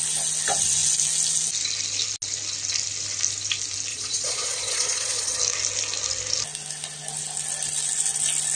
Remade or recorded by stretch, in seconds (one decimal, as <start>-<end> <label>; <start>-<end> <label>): 0.0-3.9 recorded; 3.9-5.4 remade; 5.4-8.6 recorded